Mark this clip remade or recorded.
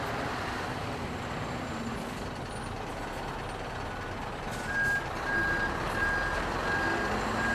recorded